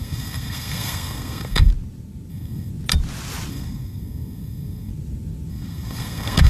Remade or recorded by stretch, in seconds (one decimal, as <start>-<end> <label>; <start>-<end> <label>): 0.0-1.7 remade; 1.7-2.3 recorded; 2.3-2.7 remade; 2.7-3.5 recorded; 3.5-4.9 remade; 4.9-5.5 recorded; 5.5-6.5 remade